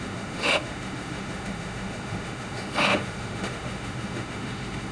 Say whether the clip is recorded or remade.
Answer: remade